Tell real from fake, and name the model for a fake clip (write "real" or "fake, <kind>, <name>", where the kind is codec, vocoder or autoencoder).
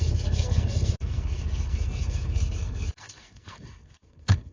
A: fake, codec, SNAC